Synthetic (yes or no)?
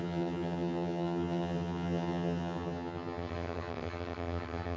yes